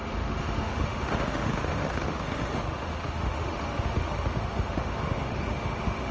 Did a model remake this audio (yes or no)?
yes